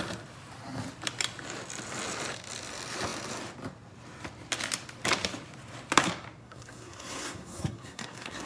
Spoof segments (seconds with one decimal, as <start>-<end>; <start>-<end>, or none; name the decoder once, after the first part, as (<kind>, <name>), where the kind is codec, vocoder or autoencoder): 6.4-8.5 (codec, SNAC)